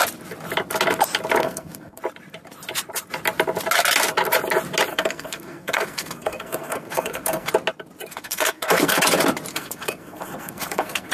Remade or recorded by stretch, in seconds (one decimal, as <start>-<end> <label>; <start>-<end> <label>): 0.0-1.4 recorded; 1.4-2.0 remade; 2.0-4.9 recorded; 4.9-7.5 remade; 7.5-8.1 recorded; 8.1-9.0 remade; 9.0-9.5 recorded; 9.5-11.1 remade